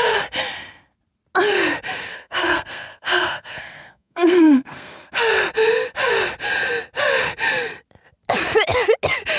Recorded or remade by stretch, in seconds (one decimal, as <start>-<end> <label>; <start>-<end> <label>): 0.0-2.1 recorded; 2.1-5.1 remade; 5.1-9.4 recorded